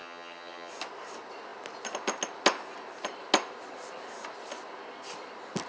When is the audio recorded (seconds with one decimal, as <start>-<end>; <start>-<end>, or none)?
0.7-5.7